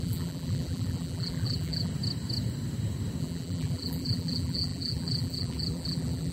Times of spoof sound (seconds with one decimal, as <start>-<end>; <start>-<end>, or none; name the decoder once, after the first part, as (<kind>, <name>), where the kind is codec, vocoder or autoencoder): 0.0-1.9 (vocoder, BigVGAN v2); 3.2-6.3

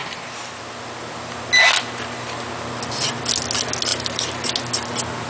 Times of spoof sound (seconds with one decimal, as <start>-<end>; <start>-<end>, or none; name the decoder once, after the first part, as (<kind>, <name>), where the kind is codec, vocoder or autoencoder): 3.9-4.5 (vocoder, BigVGAN v2)